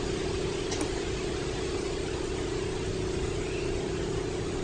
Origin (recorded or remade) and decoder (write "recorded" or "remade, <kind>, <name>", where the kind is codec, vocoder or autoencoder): recorded